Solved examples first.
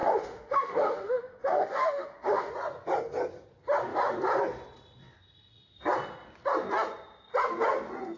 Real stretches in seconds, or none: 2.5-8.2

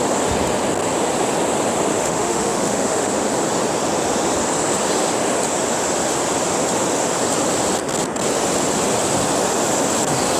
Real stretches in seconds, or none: 0.0-1.9; 3.3-10.4

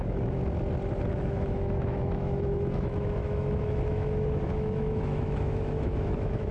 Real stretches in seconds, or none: 0.4-1.2

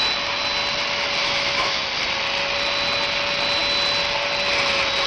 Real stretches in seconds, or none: 0.0-1.2; 1.8-5.1

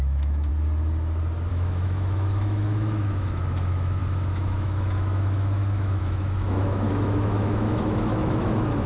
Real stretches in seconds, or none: 0.5-1.5